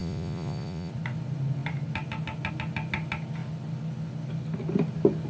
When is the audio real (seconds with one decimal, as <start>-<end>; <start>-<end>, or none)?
0.9-5.3